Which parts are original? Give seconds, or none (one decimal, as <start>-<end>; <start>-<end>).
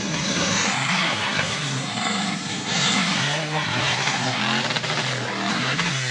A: 4.4-5.5